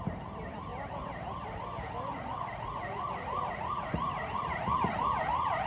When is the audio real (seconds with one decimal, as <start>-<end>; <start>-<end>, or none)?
0.0-2.1